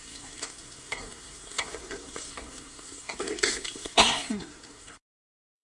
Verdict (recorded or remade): remade